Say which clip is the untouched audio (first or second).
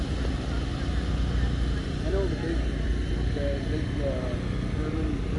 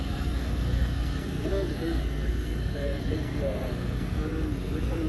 first